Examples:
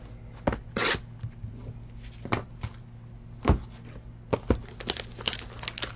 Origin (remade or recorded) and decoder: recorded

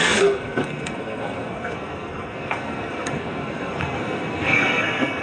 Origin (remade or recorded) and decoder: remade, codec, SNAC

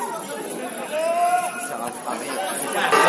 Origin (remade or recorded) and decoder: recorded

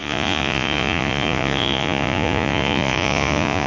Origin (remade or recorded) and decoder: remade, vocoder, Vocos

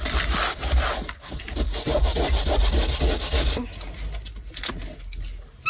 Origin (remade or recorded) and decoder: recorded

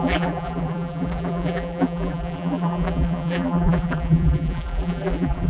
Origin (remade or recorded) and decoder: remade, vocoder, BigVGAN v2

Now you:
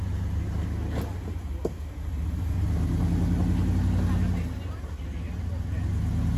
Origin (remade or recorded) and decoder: recorded